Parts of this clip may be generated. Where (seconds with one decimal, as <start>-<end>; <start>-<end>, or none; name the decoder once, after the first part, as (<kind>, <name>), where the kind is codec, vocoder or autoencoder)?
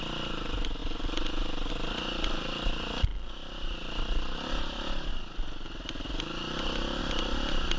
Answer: 0.0-3.1 (vocoder, BigVGAN v2); 7.0-7.8